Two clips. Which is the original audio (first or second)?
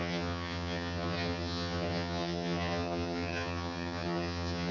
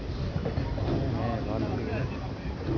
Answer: second